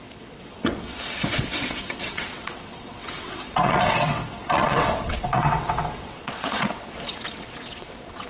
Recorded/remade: remade